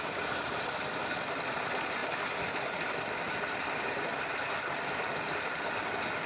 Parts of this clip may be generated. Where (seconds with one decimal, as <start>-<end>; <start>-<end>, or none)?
1.0-1.6